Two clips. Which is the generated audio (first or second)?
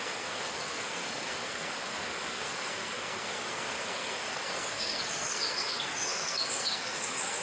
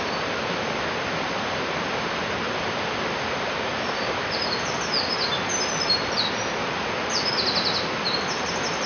first